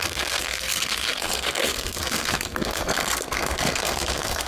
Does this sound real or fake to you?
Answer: fake